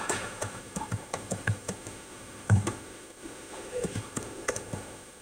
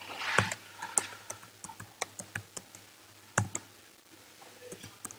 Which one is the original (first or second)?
second